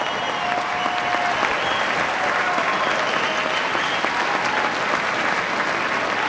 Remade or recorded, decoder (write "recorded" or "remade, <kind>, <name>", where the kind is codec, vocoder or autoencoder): recorded